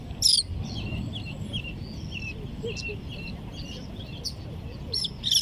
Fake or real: real